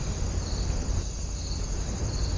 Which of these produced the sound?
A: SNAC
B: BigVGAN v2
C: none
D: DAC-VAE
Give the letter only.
C